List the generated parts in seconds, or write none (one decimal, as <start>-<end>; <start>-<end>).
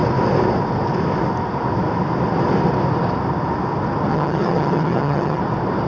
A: 4.1-5.4